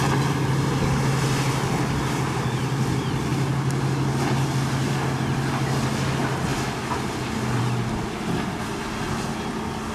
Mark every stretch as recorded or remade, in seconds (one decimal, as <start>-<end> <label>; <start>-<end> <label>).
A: 0.0-9.9 recorded